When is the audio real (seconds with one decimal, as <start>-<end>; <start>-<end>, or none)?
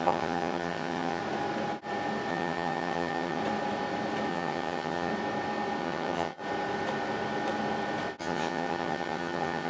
1.2-2.3; 3.4-4.3; 5.1-5.8; 6.4-8.2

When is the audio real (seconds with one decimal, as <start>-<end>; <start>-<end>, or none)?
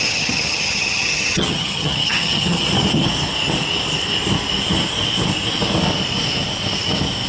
2.6-7.3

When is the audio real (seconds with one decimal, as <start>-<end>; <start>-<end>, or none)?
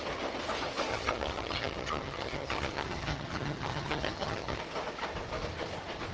0.0-0.9; 4.6-6.1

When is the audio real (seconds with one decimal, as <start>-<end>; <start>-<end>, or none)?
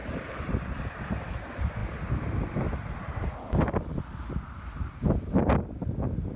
0.0-6.4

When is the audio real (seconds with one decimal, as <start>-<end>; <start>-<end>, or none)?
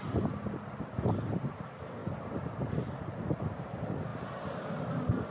0.0-5.3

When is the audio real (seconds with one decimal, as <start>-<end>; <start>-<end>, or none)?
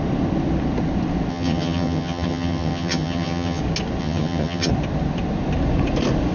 0.0-1.3; 3.6-4.0; 4.7-6.3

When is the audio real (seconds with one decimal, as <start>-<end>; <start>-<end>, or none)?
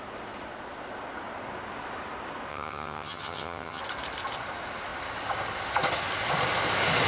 0.0-2.5; 3.8-7.1